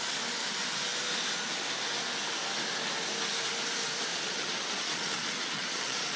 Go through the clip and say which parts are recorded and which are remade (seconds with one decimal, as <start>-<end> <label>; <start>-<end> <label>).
0.0-4.1 recorded; 4.1-6.2 remade